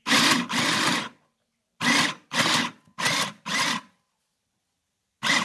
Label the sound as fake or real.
real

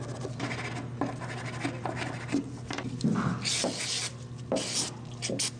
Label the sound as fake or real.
real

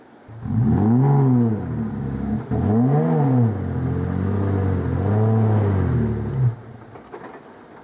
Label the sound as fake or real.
real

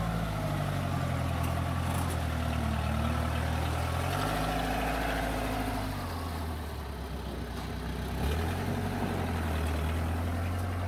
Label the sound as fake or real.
real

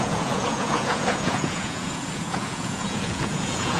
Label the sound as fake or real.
fake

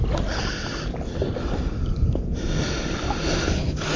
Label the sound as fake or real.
real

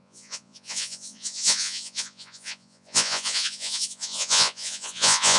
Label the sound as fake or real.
fake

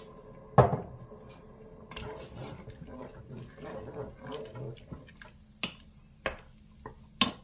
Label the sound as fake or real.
real